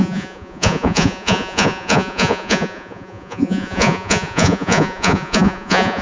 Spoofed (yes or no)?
yes